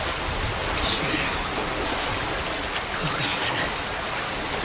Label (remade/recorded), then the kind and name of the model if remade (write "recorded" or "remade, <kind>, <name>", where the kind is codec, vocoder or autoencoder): recorded